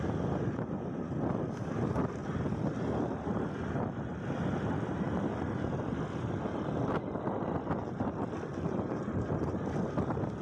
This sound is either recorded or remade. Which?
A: recorded